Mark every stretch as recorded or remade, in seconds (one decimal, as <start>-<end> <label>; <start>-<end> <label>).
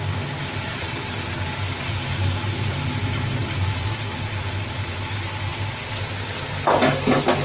0.0-7.4 recorded